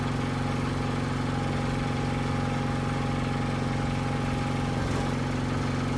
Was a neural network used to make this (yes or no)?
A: no